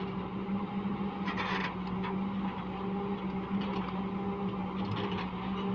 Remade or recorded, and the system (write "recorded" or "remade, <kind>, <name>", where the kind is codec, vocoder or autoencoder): recorded